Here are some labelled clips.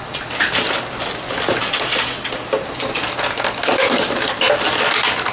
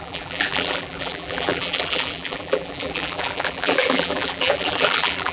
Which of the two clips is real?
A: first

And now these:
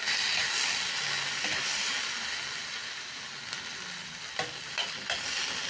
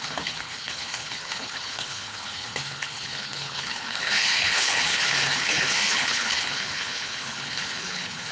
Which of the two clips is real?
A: first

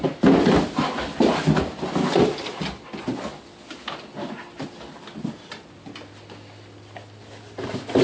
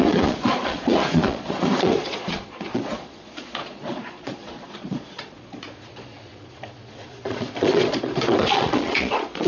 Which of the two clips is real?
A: first